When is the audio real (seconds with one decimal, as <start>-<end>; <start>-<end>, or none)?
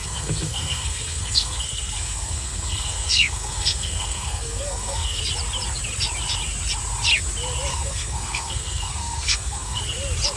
5.2-7.7; 9.8-10.4